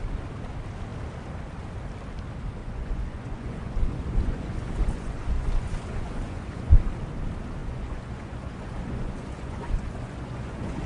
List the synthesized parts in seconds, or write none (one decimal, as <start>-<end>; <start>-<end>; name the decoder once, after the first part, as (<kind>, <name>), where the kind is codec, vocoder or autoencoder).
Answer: 2.6-6.7 (vocoder, Vocos); 7.6-10.9